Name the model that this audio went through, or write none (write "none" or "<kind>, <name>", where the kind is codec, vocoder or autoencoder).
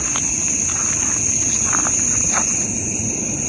none